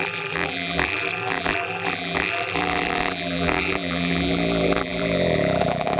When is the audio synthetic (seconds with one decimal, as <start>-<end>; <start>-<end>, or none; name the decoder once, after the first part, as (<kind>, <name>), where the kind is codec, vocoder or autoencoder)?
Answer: 0.0-6.0 (vocoder, BigVGAN v2)

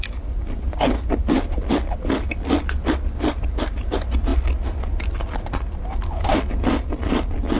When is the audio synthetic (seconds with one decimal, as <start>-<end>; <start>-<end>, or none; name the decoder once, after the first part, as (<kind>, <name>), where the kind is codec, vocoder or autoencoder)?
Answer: 4.3-5.4 (vocoder, BigVGAN v2)

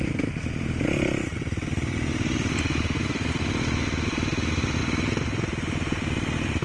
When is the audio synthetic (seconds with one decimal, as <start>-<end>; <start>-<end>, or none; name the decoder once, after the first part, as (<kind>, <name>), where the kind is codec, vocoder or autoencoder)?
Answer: none

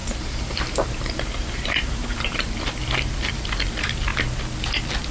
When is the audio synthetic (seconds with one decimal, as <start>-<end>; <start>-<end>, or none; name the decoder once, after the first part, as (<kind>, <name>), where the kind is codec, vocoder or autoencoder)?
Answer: 0.0-2.5 (vocoder, BigVGAN v2)

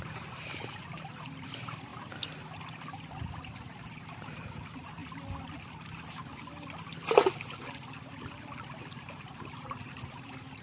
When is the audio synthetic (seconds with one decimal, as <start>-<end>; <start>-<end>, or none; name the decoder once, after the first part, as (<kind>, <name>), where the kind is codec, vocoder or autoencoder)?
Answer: 0.0-1.9 (vocoder, BigVGAN v2); 3.2-5.0; 8.8-10.6

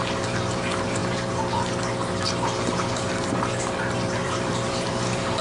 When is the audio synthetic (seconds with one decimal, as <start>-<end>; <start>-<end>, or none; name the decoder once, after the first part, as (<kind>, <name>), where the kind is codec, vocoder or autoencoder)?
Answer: 4.2-5.4 (vocoder, BigVGAN v2)

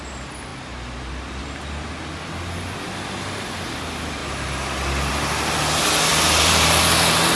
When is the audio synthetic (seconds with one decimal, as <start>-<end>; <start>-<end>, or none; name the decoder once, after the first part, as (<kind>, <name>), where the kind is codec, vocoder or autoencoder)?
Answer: 6.1-6.8 (vocoder, BigVGAN v2)